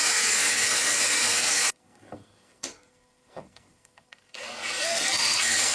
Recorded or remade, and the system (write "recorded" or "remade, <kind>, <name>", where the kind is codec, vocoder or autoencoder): remade, codec, SNAC